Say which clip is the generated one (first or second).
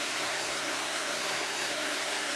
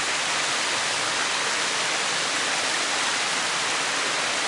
first